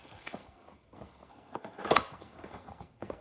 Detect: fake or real fake